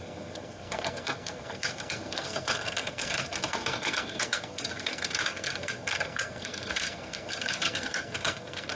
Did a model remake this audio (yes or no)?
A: yes